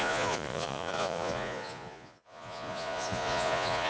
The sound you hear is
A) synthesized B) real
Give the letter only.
A